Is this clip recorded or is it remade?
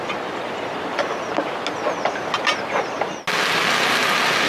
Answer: recorded